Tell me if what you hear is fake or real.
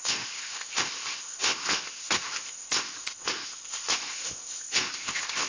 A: fake